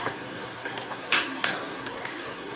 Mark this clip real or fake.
fake